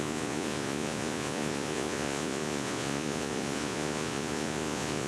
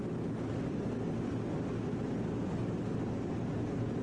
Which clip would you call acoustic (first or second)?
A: second